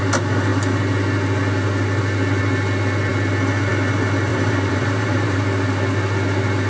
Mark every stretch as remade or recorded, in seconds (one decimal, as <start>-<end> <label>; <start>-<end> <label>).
0.0-4.3 recorded; 4.3-5.4 remade; 5.4-6.7 recorded